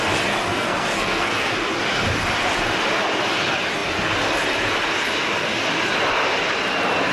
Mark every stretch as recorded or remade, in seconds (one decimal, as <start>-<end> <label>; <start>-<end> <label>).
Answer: 0.0-0.5 recorded; 0.5-1.5 remade; 1.5-7.1 recorded